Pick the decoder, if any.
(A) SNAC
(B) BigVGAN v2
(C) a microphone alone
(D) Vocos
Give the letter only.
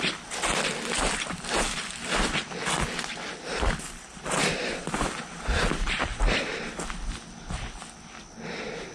C